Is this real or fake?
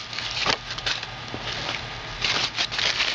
real